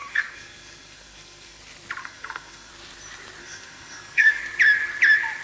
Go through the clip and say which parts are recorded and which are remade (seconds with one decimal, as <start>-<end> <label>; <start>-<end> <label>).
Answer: 0.0-1.6 remade; 1.6-2.0 recorded; 2.0-2.7 remade; 2.7-3.4 recorded; 3.4-4.4 remade; 4.4-5.4 recorded